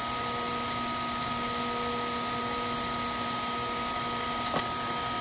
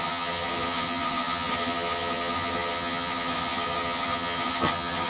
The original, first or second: first